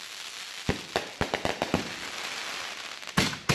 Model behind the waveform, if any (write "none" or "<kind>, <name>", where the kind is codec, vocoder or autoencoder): none